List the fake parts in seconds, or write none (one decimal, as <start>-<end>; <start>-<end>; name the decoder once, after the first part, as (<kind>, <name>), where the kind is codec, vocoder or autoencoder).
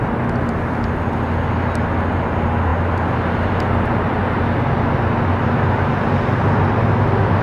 none